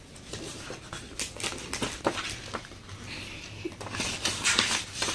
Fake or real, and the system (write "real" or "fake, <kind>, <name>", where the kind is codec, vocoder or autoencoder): real